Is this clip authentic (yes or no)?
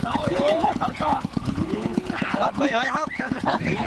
no